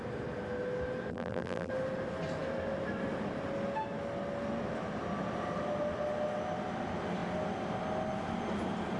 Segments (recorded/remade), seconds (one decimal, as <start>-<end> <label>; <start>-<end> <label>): 0.0-1.1 recorded; 1.1-1.7 remade; 1.7-9.0 recorded